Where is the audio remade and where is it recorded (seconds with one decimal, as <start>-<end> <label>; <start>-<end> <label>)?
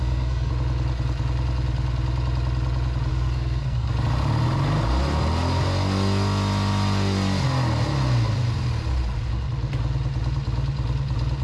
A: 0.0-0.5 remade; 0.5-3.1 recorded; 3.1-3.9 remade; 3.9-11.4 recorded